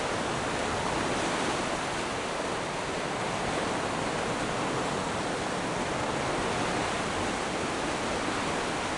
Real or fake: real